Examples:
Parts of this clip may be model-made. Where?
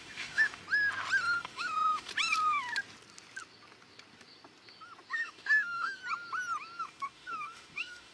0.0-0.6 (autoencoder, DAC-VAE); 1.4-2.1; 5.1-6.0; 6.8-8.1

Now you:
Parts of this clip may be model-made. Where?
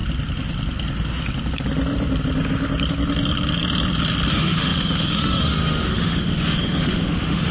4.3-7.5 (autoencoder, DAC-VAE)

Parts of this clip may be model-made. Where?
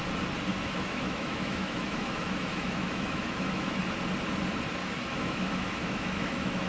0.5-3.8 (autoencoder, DAC-VAE); 4.8-6.7